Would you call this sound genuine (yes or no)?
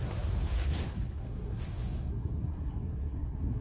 no